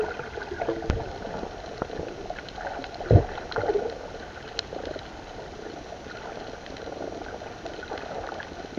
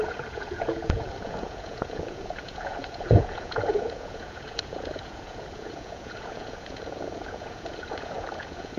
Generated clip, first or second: second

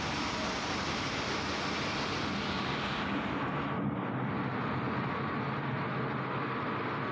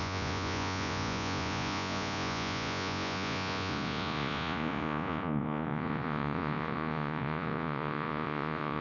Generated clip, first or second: second